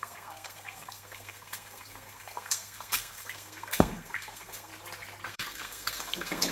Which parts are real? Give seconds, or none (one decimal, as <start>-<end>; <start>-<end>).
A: 4.7-5.3